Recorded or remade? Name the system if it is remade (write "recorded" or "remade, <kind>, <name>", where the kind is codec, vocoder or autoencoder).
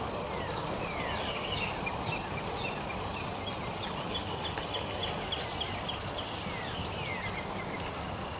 recorded